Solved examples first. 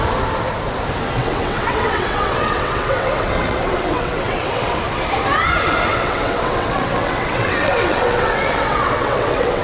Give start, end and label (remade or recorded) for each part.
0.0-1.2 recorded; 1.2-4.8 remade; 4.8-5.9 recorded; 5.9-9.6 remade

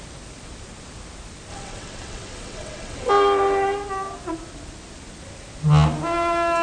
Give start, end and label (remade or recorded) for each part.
0.0-1.5 recorded; 1.5-3.1 remade; 3.1-6.6 recorded

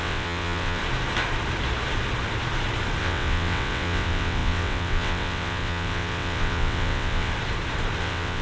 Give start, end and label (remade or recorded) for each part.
0.0-0.8 remade; 0.8-3.0 recorded; 3.0-7.3 remade; 7.3-8.0 recorded; 8.0-8.4 remade

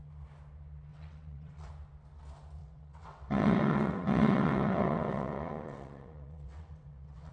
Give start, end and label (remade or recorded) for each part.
0.0-0.9 recorded; 0.9-1.7 remade; 1.7-2.6 recorded; 2.6-7.3 remade

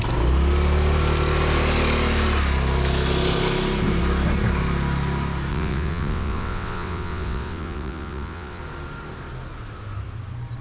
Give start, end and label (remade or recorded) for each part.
0.0-5.5 recorded; 5.5-8.6 remade; 8.6-10.6 recorded

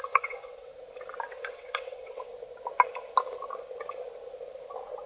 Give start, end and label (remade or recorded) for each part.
0.0-0.7 remade; 0.7-1.3 recorded; 1.3-2.3 remade; 2.3-5.1 recorded

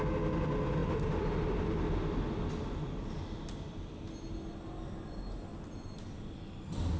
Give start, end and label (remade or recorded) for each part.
0.0-7.0 recorded